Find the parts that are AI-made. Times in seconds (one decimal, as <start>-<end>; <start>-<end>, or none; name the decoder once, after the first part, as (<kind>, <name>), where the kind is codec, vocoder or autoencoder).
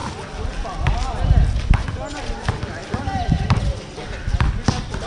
2.8-3.8 (vocoder, BigVGAN v2)